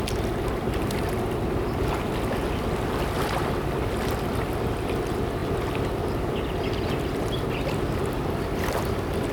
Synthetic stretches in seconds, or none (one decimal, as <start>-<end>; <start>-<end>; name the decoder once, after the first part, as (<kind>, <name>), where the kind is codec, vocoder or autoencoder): none